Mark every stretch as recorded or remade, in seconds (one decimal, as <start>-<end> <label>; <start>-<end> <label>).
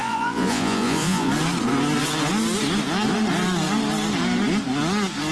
0.0-1.3 remade; 1.3-5.3 recorded